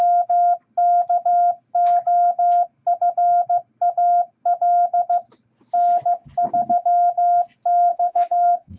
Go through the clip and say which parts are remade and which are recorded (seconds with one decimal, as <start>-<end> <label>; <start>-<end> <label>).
0.0-7.9 recorded; 7.9-8.8 remade